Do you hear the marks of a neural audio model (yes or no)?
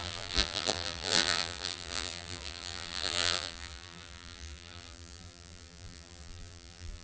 yes